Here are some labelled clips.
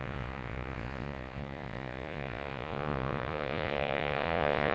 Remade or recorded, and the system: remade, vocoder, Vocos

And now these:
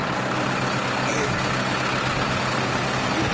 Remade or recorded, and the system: recorded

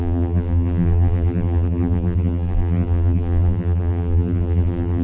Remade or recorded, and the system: remade, vocoder, BigVGAN v2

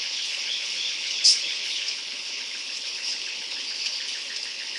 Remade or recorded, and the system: remade, codec, HILCodec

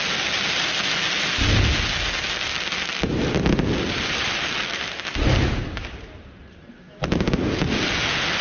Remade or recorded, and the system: recorded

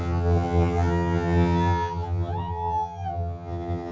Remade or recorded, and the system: remade, vocoder, HiFi-GAN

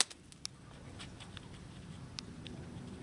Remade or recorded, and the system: recorded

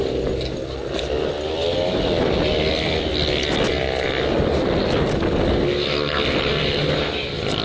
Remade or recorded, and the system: recorded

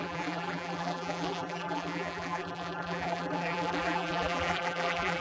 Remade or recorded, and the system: remade, vocoder, BigVGAN v2